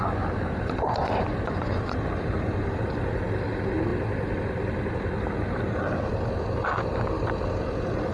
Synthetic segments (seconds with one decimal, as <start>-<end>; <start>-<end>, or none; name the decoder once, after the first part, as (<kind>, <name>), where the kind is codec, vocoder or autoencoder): none

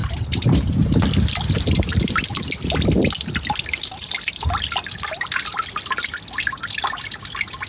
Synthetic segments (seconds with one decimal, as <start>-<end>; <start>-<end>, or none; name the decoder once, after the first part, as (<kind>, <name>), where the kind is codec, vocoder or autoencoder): none

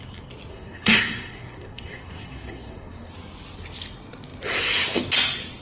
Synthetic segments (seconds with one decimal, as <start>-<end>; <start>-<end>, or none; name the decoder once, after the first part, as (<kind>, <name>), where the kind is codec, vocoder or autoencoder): 0.5-3.1 (codec, SNAC)

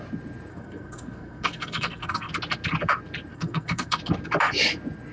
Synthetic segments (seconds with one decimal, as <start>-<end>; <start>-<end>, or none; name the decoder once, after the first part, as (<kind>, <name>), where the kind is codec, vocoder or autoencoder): 0.5-2.3 (codec, SNAC); 3.3-4.0

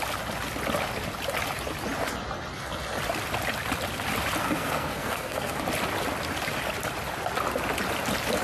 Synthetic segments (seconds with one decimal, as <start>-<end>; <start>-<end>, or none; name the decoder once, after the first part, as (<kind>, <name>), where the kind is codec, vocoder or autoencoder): 4.4-5.6 (codec, SNAC)

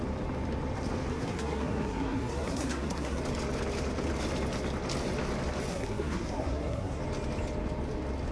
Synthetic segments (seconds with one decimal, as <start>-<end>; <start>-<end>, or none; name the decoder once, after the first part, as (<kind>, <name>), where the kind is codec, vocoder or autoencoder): 1.1-3.2 (codec, SNAC); 5.7-7.0